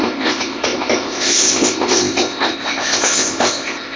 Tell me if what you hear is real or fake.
fake